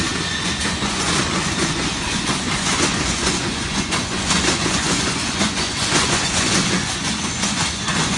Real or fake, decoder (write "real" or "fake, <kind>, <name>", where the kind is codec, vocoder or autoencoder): fake, vocoder, Vocos